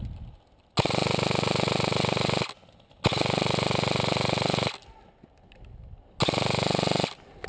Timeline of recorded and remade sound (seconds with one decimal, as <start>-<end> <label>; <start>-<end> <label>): 0.0-7.5 recorded